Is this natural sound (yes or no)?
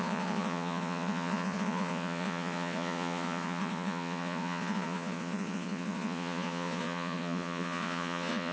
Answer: no